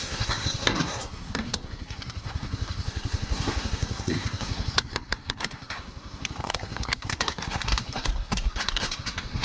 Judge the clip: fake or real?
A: fake